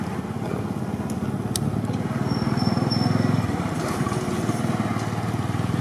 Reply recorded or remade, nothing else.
recorded